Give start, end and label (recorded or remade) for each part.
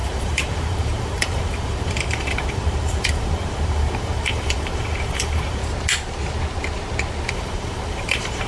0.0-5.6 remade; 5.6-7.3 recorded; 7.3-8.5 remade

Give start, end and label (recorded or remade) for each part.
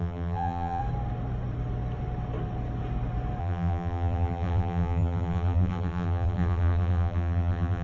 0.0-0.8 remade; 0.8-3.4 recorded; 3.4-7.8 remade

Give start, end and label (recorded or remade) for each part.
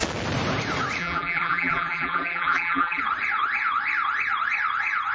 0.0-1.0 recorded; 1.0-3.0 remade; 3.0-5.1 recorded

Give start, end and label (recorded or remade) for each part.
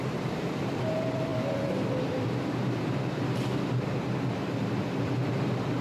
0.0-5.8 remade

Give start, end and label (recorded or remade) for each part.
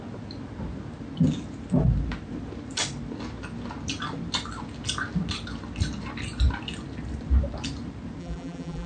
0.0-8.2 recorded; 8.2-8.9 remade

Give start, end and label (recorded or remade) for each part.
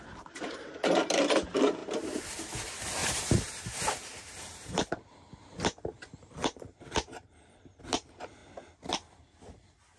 0.0-8.4 remade; 8.4-9.4 recorded; 9.4-10.0 remade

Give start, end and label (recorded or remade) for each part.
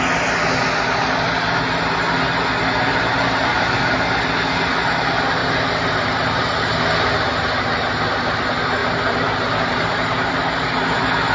0.0-2.9 recorded; 2.9-4.0 remade; 4.0-5.4 recorded; 5.4-6.8 remade; 6.8-8.8 recorded; 8.8-10.3 remade; 10.3-11.3 recorded